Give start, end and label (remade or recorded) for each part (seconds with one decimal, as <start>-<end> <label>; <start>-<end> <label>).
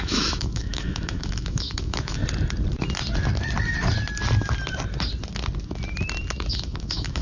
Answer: 0.0-2.2 remade; 2.2-6.5 recorded; 6.5-7.2 remade